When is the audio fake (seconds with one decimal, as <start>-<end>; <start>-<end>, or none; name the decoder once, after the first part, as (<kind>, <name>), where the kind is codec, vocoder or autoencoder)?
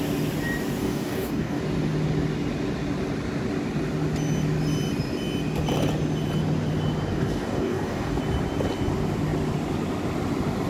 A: 0.8-1.6 (codec, DAC); 7.1-8.2